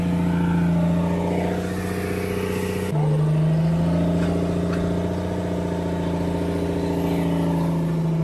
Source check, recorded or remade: recorded